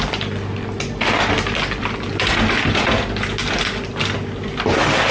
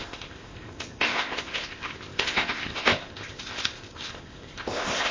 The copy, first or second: second